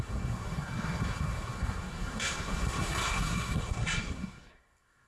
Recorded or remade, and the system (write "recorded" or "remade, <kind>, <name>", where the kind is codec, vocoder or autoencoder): remade, codec, SNAC